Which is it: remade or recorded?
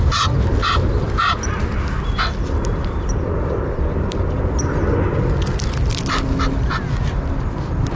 recorded